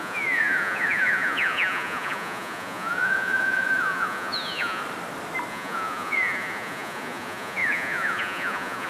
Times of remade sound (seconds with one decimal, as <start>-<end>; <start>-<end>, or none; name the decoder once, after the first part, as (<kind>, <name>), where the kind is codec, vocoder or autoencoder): 0.0-4.8 (vocoder, Vocos); 5.5-8.9